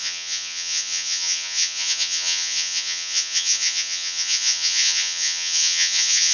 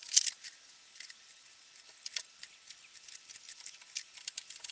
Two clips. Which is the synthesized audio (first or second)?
first